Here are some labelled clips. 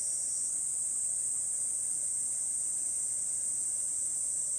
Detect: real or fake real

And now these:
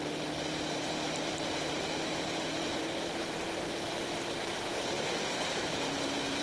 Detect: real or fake fake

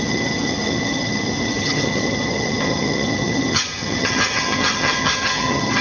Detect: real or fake fake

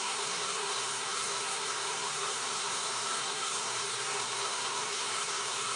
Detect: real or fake fake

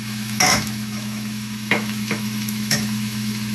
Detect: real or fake fake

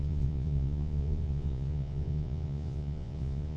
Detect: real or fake fake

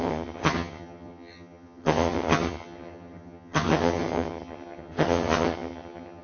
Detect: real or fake fake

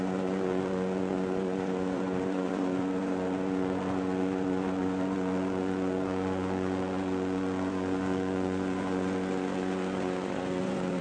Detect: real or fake fake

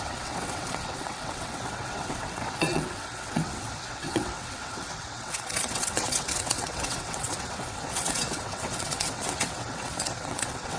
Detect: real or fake fake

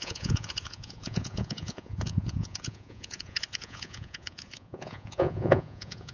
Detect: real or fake fake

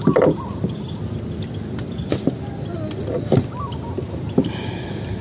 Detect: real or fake real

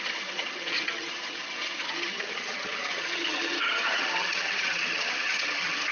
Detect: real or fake fake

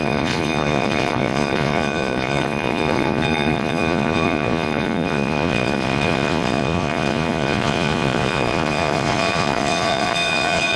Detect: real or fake fake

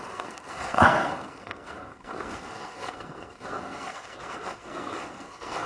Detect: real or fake fake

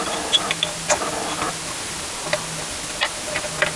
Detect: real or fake real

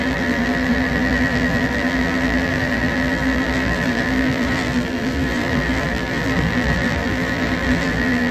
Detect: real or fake fake